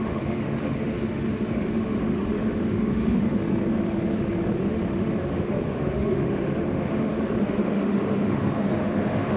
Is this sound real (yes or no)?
no